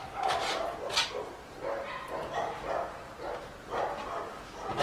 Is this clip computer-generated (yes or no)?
no